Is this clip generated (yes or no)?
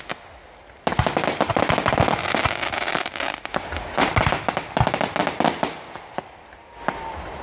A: no